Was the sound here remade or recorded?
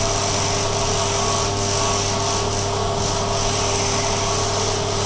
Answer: recorded